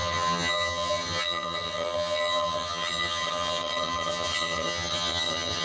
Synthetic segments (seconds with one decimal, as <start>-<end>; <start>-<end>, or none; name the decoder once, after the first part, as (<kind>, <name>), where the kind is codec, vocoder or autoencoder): 0.0-5.6 (vocoder, HiFi-GAN)